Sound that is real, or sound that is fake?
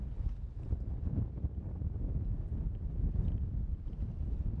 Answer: real